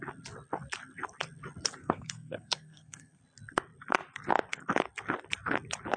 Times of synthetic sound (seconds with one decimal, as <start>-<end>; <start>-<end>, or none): 1.8-3.2